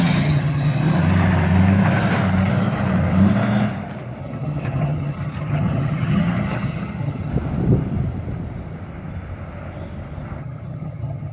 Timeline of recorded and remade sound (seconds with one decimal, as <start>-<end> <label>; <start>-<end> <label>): 0.0-0.7 remade; 0.7-4.2 recorded; 4.2-7.3 remade; 7.3-10.4 recorded; 10.4-11.3 remade